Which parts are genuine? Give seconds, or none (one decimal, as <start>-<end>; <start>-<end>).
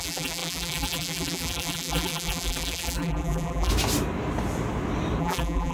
3.7-5.2